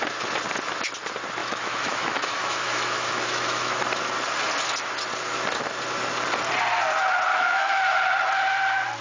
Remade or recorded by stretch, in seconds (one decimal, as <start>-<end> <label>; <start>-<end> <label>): 0.0-1.4 recorded; 1.4-3.8 remade; 3.8-7.3 recorded; 7.3-7.8 remade; 7.8-9.0 recorded